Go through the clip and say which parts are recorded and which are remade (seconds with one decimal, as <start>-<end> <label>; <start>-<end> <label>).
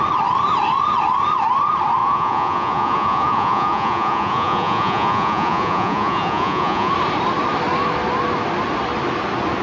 0.0-2.0 recorded; 2.0-6.9 remade; 6.9-9.6 recorded